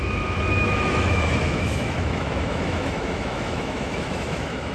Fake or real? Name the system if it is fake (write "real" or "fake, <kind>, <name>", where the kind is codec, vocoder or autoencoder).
fake, autoencoder, DAC-VAE